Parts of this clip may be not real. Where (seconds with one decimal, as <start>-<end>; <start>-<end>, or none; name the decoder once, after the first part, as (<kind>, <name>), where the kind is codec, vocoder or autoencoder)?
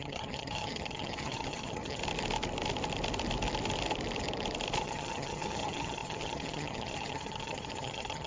0.0-2.0 (vocoder, HiFi-GAN); 4.8-8.3